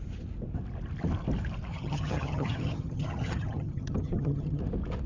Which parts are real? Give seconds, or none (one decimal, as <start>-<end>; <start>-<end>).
0.0-1.7; 4.6-5.1